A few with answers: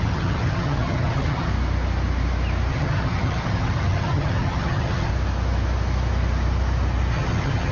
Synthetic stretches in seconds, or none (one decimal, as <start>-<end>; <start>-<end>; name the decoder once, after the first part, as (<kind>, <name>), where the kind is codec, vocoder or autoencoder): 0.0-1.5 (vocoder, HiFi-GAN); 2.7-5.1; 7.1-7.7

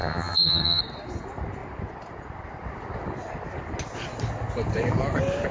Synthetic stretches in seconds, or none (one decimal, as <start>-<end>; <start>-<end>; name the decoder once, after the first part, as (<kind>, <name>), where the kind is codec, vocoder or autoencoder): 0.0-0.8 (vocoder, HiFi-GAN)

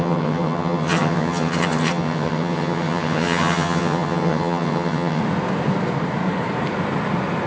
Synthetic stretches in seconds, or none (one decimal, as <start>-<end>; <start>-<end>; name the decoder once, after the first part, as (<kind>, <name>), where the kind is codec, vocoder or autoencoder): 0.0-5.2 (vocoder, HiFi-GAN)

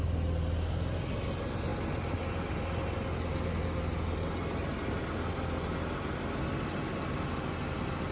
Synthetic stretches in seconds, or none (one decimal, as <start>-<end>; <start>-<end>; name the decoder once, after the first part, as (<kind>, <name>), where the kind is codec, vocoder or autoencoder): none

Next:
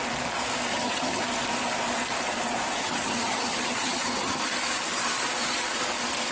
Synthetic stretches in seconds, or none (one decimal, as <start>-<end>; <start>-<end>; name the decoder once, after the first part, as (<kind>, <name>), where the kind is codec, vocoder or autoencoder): 0.7-1.2 (vocoder, HiFi-GAN); 2.8-4.4